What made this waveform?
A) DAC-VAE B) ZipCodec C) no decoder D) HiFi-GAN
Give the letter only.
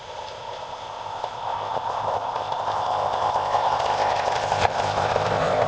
B